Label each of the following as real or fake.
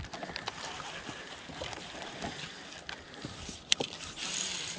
fake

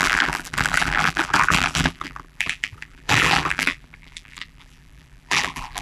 fake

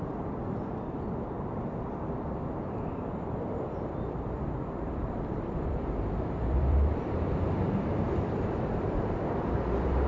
fake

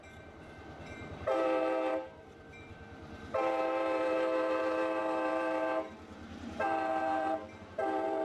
fake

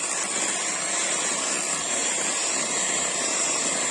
real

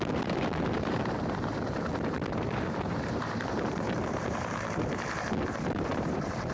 fake